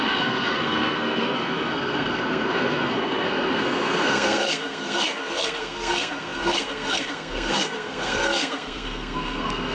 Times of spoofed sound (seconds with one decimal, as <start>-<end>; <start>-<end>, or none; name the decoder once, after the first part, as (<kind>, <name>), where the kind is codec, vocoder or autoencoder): 0.0-9.7 (codec, SNAC)